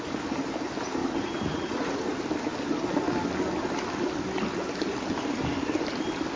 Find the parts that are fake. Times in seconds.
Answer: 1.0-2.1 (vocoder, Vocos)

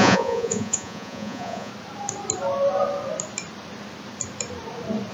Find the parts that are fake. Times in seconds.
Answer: 0.0-1.7 (vocoder, Vocos)

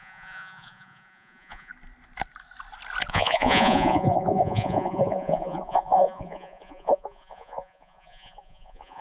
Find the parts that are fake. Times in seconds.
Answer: 0.0-1.7 (vocoder, Vocos); 3.1-9.0